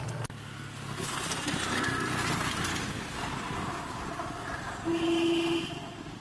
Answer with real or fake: real